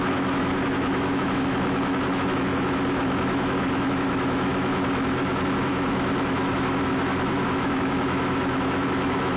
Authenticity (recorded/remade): remade